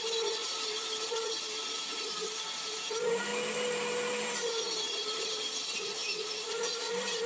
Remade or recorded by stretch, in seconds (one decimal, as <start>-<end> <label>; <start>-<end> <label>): 0.0-3.3 remade; 3.3-4.1 recorded; 4.1-7.3 remade